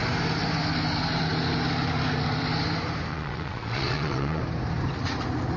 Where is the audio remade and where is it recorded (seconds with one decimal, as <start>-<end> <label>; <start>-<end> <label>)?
0.0-3.1 recorded; 3.1-4.4 remade; 4.4-5.6 recorded